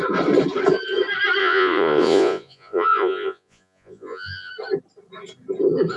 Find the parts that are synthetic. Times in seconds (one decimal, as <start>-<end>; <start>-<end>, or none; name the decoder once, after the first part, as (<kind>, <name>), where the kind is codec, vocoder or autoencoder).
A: 1.4-4.5 (vocoder, Vocos)